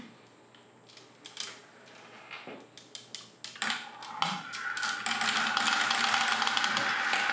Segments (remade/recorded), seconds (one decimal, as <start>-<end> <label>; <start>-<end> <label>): 0.0-7.3 recorded

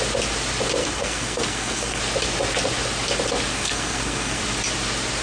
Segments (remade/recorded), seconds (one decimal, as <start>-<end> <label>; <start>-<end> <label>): 0.0-0.8 recorded; 0.8-2.0 remade; 2.0-3.5 recorded; 3.5-4.4 remade; 4.4-5.2 recorded

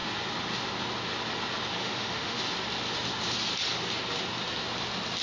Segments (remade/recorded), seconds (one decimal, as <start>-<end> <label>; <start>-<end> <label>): 0.0-1.8 recorded; 1.8-2.4 remade; 2.4-5.2 recorded

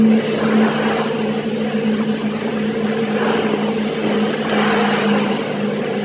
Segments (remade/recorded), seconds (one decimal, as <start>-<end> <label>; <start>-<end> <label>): 0.0-6.0 recorded

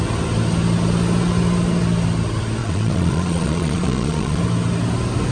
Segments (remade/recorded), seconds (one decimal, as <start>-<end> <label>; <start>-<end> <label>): 0.0-2.6 recorded; 2.6-4.4 remade; 4.4-5.3 recorded

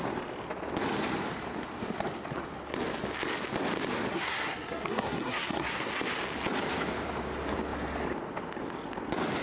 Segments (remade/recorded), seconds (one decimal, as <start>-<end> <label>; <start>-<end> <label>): 0.0-4.1 recorded; 4.1-5.9 remade; 5.9-9.4 recorded

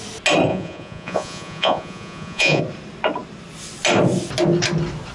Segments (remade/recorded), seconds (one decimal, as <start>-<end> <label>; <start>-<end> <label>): 0.0-0.5 recorded; 0.5-2.6 remade; 2.6-5.1 recorded

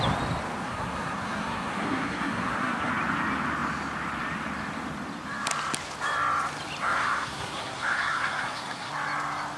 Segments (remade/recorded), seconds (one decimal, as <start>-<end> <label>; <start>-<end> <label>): 0.0-0.6 recorded; 0.6-2.9 remade; 2.9-6.8 recorded; 6.8-8.9 remade; 8.9-9.6 recorded